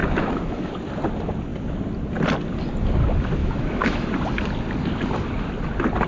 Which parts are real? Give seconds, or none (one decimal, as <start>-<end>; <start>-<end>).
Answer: 0.7-3.4; 4.1-6.1